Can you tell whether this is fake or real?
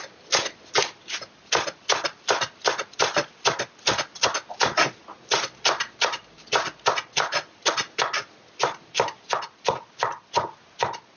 real